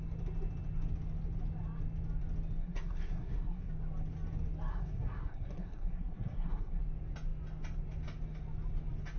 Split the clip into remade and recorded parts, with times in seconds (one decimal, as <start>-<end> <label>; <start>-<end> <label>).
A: 0.0-2.6 recorded; 2.6-3.7 remade; 3.7-4.7 recorded; 4.7-6.8 remade; 6.8-9.2 recorded